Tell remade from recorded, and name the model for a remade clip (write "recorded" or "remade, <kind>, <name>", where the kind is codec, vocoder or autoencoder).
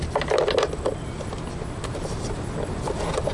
recorded